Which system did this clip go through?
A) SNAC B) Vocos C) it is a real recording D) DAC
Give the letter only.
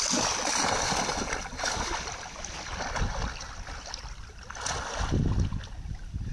C